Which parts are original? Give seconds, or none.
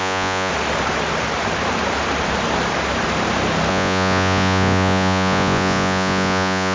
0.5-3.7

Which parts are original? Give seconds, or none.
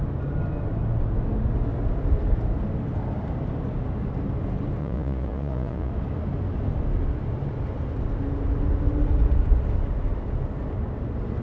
0.0-4.8; 5.9-11.4